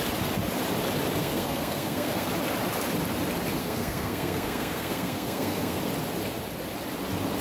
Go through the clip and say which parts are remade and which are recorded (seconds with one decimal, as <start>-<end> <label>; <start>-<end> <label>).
0.0-1.2 recorded; 1.2-2.3 remade; 2.3-3.6 recorded; 3.6-5.8 remade; 5.8-7.4 recorded